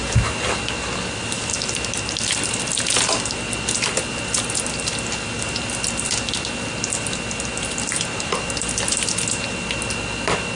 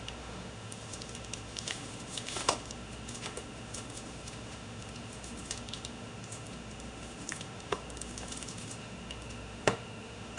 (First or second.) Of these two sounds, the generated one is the second